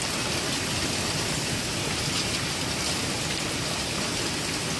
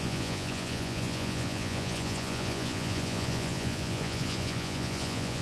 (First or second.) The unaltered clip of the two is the first